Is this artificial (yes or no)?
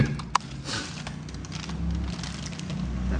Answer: no